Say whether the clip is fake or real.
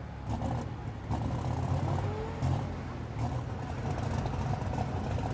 real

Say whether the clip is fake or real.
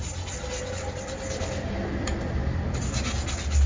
real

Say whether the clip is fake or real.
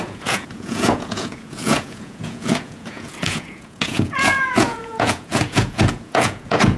fake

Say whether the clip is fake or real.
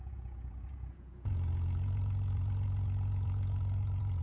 fake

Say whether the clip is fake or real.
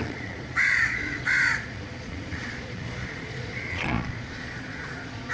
fake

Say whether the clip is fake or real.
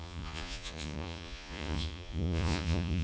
fake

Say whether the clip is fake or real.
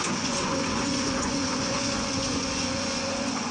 fake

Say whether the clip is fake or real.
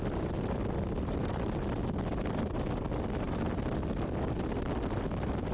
real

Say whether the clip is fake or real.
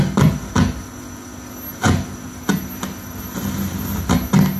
real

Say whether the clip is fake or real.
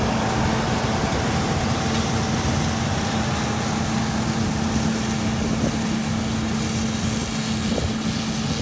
real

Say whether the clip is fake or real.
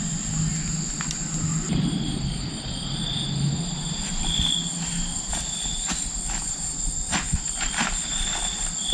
real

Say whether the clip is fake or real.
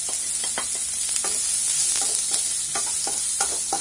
real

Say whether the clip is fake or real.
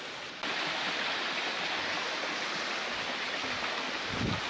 real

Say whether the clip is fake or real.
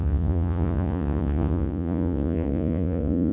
fake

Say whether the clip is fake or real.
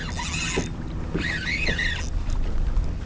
real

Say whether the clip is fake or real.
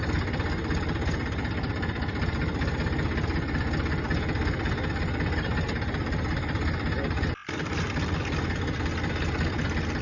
real